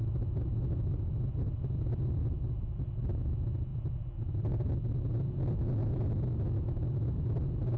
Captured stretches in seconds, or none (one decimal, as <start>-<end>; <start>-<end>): 0.0-7.8